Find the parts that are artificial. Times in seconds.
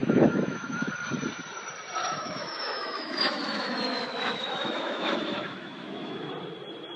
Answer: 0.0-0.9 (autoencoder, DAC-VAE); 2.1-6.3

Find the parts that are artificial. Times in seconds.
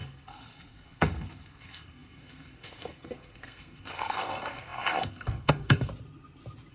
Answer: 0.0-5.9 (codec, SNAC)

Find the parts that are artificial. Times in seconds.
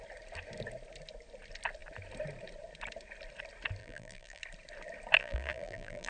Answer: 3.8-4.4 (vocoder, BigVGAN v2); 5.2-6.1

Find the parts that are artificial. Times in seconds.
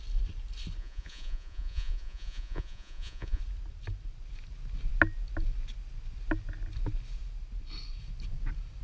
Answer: 0.8-3.4 (vocoder, Vocos)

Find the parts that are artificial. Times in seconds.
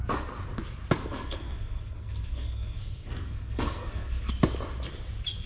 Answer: 1.0-4.3 (codec, SNAC)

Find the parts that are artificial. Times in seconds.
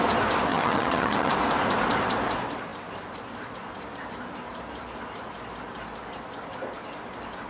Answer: 0.5-1.3 (vocoder, HiFi-GAN)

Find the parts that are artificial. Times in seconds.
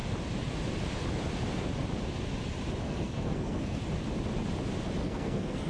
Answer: 2.8-3.8 (codec, SNAC); 5.0-5.7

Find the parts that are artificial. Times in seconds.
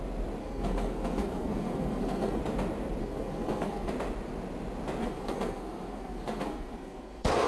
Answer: 0.4-2.4 (codec, SNAC); 3.0-3.9; 5.0-7.5